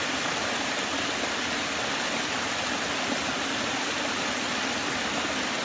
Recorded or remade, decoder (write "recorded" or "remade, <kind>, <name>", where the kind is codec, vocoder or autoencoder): recorded